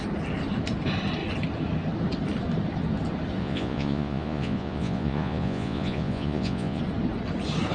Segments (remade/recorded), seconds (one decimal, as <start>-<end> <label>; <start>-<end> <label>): 0.0-3.4 recorded; 3.4-6.8 remade; 6.8-7.7 recorded